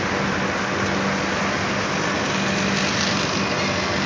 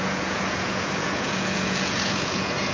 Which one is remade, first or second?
second